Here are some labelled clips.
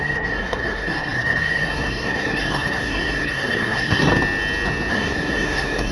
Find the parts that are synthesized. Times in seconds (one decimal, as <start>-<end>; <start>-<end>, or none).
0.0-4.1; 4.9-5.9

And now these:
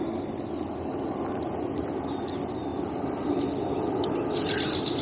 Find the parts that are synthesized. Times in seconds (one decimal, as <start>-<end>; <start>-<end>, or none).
none

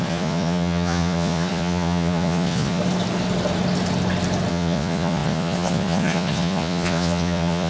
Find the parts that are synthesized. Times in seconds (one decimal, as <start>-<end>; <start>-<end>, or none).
0.0-2.8; 4.5-7.7